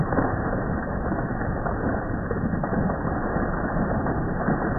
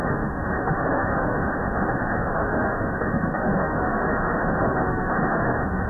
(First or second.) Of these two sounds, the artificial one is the second